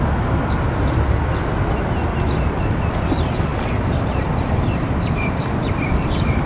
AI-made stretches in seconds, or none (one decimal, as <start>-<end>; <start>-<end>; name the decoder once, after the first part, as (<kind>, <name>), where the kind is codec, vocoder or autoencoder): 3.5-5.9 (vocoder, BigVGAN v2)